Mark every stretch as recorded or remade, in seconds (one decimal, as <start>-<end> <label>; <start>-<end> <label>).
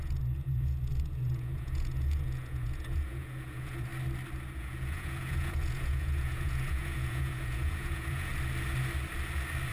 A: 0.0-3.9 remade; 3.9-4.5 recorded; 4.5-8.3 remade; 8.3-9.7 recorded